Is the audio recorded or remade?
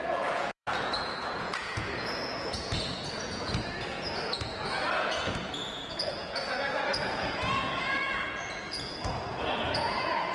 remade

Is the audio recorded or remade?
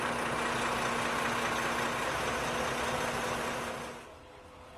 recorded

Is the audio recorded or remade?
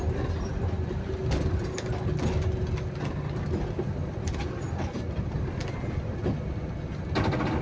recorded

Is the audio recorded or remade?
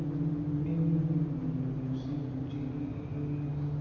recorded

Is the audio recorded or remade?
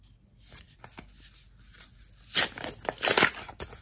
recorded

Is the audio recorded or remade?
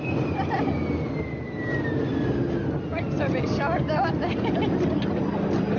recorded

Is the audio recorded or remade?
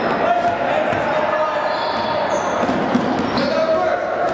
recorded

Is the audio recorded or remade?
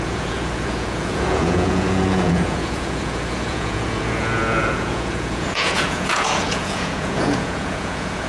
remade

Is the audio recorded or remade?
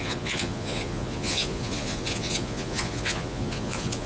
remade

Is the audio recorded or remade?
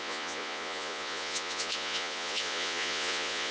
remade